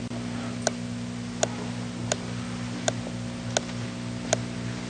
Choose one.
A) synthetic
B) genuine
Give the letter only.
B